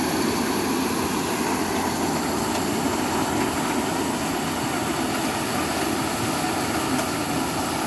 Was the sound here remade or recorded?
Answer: recorded